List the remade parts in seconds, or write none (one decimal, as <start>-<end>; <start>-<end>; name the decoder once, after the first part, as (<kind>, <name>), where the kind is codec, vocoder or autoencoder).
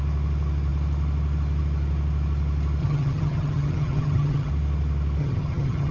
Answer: 2.8-4.5 (vocoder, HiFi-GAN); 5.2-5.9